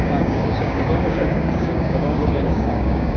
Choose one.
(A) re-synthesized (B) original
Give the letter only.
A